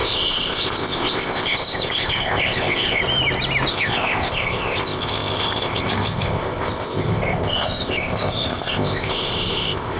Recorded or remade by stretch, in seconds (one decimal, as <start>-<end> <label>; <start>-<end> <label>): 0.0-3.0 remade; 3.0-3.7 recorded; 3.7-10.0 remade